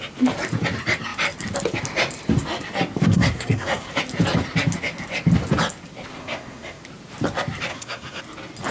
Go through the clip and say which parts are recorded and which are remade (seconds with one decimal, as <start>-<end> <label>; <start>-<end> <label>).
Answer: 0.0-3.1 recorded; 3.1-3.9 remade; 3.9-6.2 recorded; 6.2-6.8 remade; 6.8-7.7 recorded; 7.7-8.2 remade; 8.2-8.7 recorded